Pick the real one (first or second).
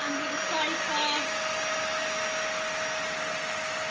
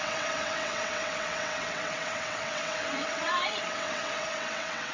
first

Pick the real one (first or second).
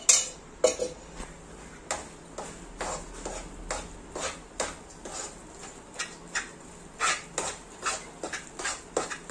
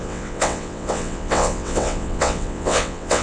first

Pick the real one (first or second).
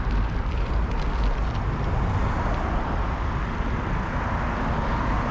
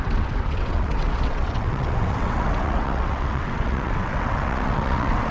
first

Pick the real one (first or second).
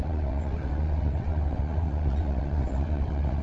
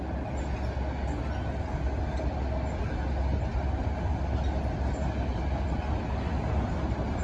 second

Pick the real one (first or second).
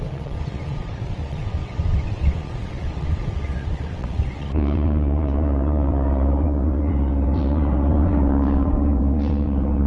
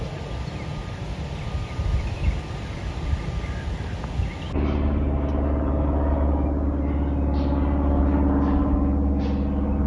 second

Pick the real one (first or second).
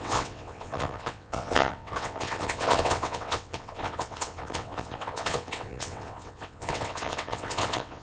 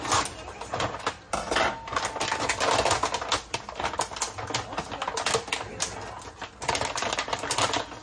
second